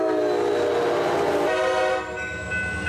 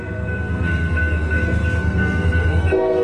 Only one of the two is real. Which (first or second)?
first